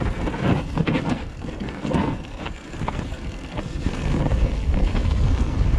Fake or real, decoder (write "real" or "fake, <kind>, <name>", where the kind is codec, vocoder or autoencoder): fake, codec, SNAC